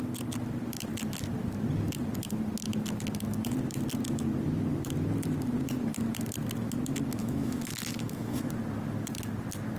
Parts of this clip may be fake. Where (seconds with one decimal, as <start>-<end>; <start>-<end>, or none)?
7.2-8.5